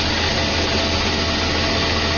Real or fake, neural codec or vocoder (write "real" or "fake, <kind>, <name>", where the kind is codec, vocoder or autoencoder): real